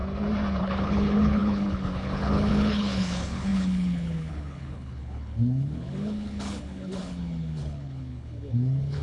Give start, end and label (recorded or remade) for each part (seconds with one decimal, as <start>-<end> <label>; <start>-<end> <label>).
0.0-0.6 recorded; 0.6-9.0 remade